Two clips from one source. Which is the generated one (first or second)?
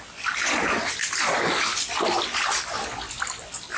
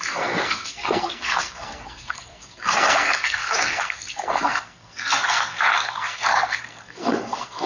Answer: second